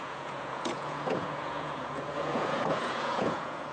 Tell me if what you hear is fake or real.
fake